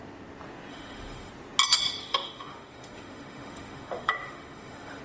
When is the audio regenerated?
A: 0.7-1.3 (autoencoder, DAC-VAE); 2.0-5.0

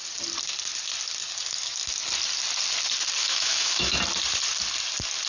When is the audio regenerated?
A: 3.2-4.0 (autoencoder, DAC-VAE)

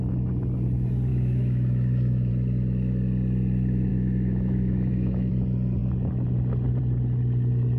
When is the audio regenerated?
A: 1.1-2.3 (autoencoder, DAC-VAE); 3.9-5.3

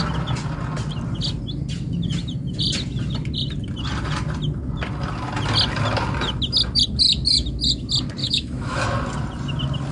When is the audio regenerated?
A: 8.2-8.8 (autoencoder, DAC-VAE)